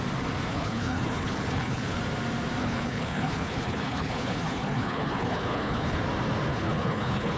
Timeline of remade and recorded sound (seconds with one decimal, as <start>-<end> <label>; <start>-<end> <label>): 0.0-0.5 recorded; 0.5-2.0 remade; 2.0-2.6 recorded; 2.6-6.0 remade; 6.0-6.5 recorded; 6.5-7.4 remade

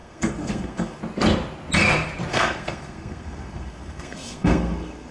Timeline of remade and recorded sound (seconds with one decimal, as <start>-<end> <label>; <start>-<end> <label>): 0.0-1.0 remade; 1.0-2.3 recorded; 2.3-5.1 remade

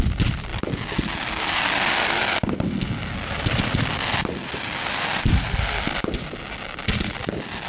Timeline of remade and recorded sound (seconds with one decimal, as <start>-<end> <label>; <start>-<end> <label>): 0.0-7.7 recorded

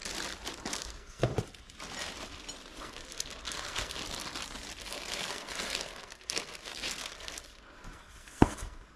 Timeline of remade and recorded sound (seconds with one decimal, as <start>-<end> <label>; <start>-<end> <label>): 0.0-0.7 recorded; 0.7-1.3 remade; 1.3-2.8 recorded; 2.8-4.0 remade; 4.0-4.8 recorded; 4.8-9.0 remade

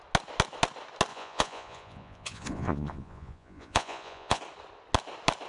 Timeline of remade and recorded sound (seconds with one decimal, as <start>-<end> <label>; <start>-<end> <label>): 0.0-1.1 recorded; 1.1-4.4 remade; 4.4-5.5 recorded

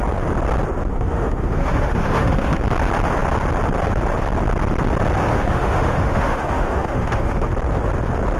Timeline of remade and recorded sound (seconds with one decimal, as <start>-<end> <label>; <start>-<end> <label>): 0.0-0.9 recorded; 0.9-2.6 remade; 2.6-5.3 recorded; 5.3-7.5 remade; 7.5-8.4 recorded